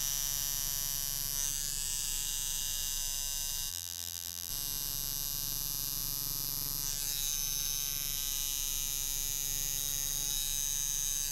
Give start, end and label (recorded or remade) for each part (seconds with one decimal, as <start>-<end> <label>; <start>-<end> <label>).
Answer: 0.0-3.7 recorded; 3.7-4.5 remade; 4.5-11.3 recorded